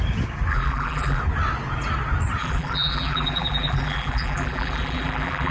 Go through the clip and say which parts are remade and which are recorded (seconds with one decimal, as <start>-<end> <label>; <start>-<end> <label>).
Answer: 0.0-0.5 recorded; 0.5-1.2 remade; 1.2-2.4 recorded; 2.4-5.5 remade